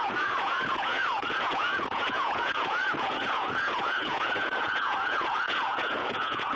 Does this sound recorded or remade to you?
remade